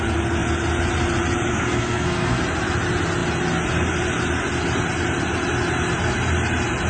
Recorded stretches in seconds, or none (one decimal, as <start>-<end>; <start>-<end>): 0.0-1.5; 2.4-6.9